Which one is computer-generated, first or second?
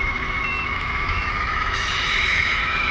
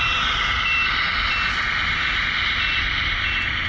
first